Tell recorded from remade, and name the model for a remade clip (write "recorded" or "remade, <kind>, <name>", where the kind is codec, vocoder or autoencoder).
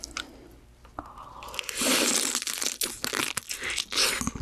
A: recorded